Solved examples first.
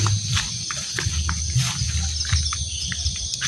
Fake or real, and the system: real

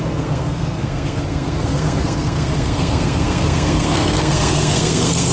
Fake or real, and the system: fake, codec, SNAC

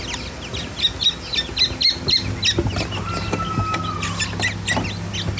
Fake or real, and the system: real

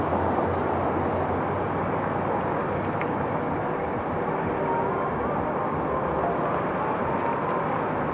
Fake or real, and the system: real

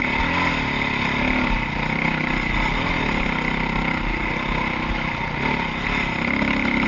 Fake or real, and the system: real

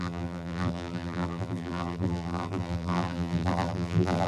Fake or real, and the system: fake, vocoder, BigVGAN v2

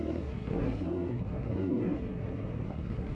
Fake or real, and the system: fake, codec, SNAC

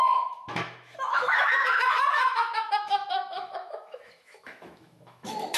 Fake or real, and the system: fake, autoencoder, DAC-VAE